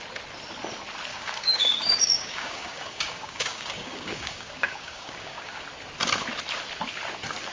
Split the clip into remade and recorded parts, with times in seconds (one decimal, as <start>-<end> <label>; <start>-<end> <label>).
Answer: 0.0-1.1 recorded; 1.1-5.6 remade; 5.6-7.5 recorded